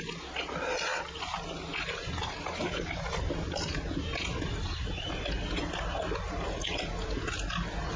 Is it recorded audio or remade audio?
recorded